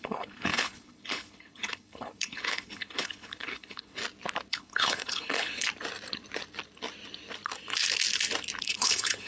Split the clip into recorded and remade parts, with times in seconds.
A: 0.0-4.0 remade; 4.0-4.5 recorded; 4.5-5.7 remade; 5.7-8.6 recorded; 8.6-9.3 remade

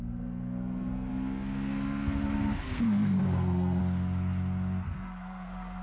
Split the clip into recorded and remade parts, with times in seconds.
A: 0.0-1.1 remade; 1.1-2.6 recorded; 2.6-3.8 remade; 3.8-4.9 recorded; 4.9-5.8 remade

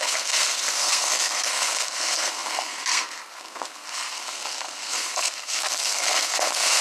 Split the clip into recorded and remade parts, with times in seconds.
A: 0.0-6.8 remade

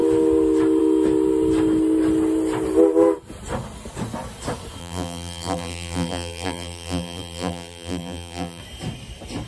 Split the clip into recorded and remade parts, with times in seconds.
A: 0.0-4.8 recorded; 4.8-8.6 remade; 8.6-9.5 recorded

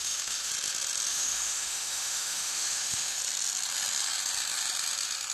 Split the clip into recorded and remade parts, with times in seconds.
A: 0.0-0.5 remade; 0.5-1.1 recorded; 1.1-3.2 remade; 3.2-5.3 recorded